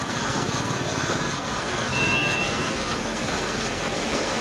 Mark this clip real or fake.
fake